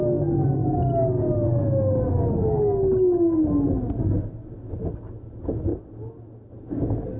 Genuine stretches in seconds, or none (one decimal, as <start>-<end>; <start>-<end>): 0.0-7.2